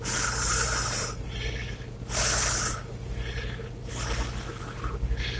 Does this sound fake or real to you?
real